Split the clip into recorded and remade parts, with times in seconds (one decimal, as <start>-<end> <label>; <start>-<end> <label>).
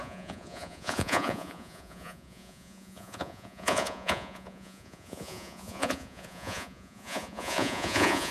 0.0-8.3 remade